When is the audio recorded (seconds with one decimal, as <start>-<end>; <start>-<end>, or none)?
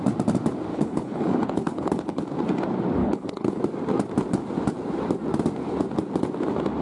0.0-0.7; 2.2-3.0; 3.6-6.8